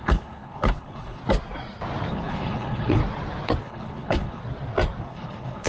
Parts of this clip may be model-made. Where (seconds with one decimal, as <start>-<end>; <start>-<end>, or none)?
0.0-1.2; 2.1-3.0; 3.6-4.4; 5.0-5.7